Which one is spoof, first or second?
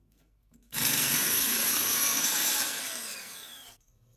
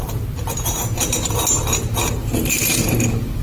first